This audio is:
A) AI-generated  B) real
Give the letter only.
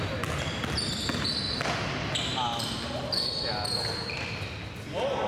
B